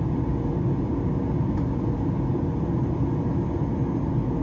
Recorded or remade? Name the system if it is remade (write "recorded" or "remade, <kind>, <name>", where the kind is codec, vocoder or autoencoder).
recorded